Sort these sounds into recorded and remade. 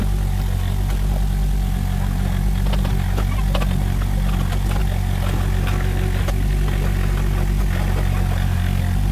recorded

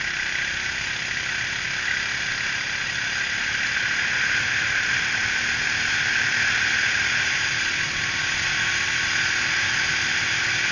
recorded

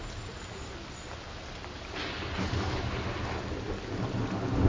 recorded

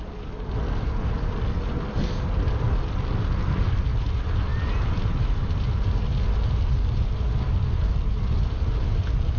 recorded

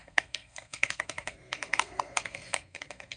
remade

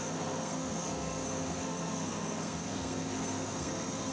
remade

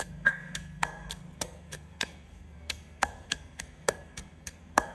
remade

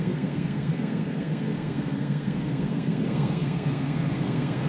remade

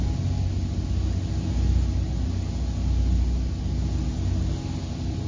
recorded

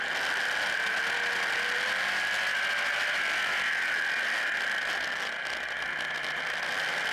recorded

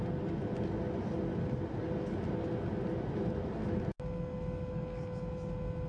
recorded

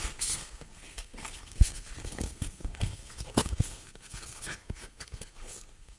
remade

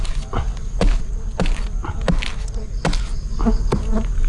recorded